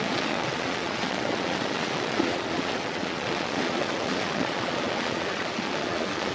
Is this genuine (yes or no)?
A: no